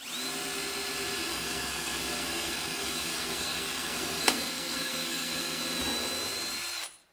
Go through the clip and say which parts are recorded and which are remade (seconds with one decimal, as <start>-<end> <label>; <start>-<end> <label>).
0.0-1.3 recorded; 1.3-5.6 remade; 5.6-7.1 recorded